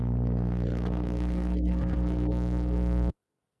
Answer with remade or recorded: remade